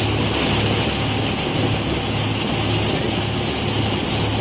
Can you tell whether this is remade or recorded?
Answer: recorded